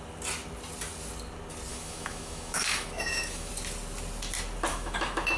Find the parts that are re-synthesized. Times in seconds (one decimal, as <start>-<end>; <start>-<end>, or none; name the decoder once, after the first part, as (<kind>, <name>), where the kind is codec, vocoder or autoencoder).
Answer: 1.7-3.5 (autoencoder, DAC-VAE); 4.7-5.4